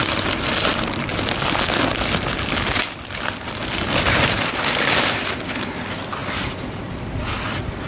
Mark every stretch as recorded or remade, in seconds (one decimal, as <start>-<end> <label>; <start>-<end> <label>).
0.0-7.9 recorded